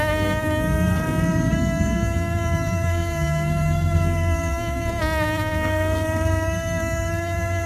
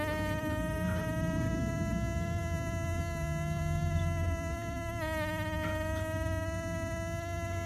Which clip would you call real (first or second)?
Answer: second